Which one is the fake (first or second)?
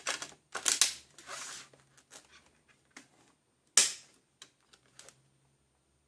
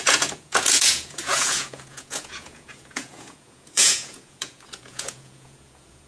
second